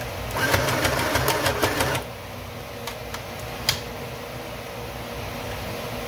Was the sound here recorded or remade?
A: recorded